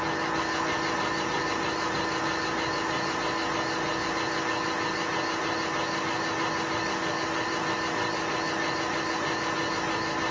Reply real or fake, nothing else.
real